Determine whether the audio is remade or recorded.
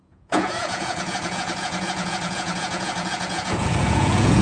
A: remade